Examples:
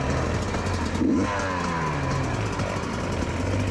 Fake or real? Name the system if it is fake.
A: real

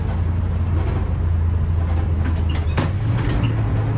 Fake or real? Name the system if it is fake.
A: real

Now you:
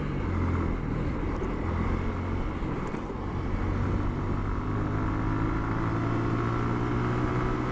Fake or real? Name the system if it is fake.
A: real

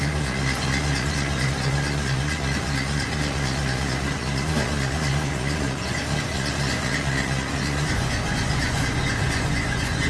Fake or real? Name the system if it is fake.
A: fake, vocoder, Vocos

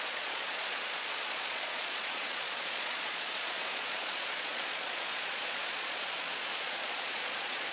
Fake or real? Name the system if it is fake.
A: fake, vocoder, Vocos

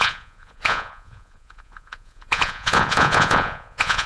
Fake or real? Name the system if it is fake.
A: fake, vocoder, Vocos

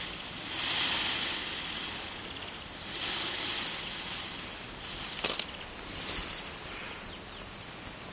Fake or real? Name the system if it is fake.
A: real